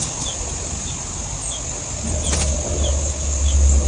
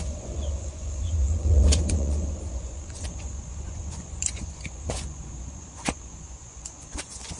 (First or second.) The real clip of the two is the first